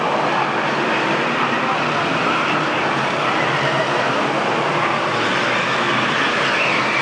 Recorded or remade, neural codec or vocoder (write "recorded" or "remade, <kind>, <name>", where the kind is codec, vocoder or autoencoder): recorded